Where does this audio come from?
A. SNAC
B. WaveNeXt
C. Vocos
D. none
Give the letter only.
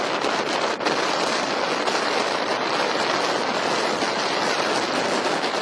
D